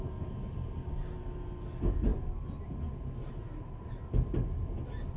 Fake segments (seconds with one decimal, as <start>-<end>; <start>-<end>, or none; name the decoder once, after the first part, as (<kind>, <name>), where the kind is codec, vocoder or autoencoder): none